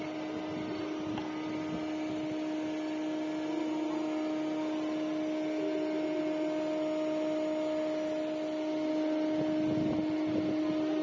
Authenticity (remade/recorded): recorded